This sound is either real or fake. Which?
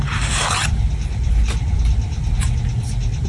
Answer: real